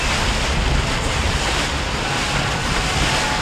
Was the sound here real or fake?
real